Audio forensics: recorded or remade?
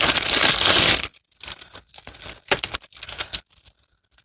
recorded